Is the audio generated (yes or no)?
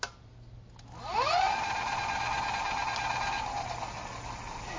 no